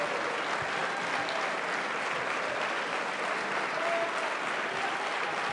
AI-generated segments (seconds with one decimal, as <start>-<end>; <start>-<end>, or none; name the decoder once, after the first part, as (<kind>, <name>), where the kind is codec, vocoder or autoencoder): none